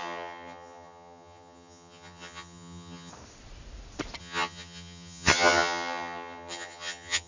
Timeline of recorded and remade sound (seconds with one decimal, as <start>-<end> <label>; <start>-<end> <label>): 0.0-3.1 remade; 3.1-4.2 recorded; 4.2-7.3 remade